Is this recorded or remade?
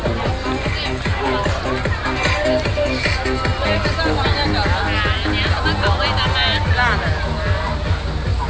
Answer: recorded